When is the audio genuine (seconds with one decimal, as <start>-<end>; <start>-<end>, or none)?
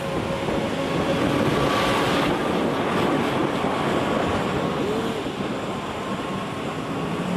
0.0-7.4